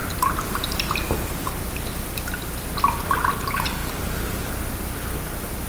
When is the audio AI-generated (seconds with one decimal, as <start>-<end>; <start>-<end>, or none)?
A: none